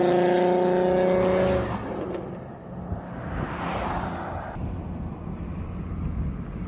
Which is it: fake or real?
real